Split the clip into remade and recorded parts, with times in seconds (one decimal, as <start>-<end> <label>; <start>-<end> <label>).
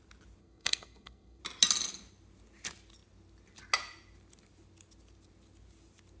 0.0-0.4 recorded; 0.4-1.4 remade; 1.4-6.2 recorded